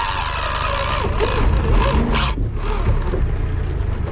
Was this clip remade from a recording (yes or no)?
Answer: no